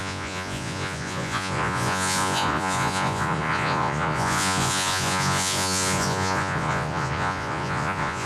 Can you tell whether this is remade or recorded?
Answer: remade